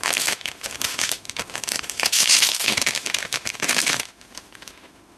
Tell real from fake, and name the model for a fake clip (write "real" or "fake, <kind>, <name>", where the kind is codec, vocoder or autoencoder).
fake, autoencoder, DAC-VAE